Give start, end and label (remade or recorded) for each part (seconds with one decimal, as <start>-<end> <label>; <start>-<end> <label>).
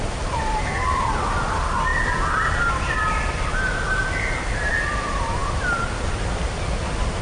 0.0-7.2 recorded